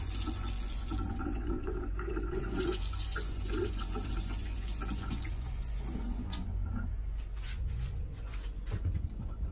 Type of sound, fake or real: fake